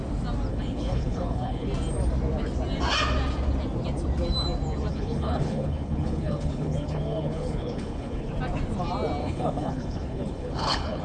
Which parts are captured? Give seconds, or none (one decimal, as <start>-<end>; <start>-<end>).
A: 0.0-0.5; 1.7-4.9; 8.3-9.2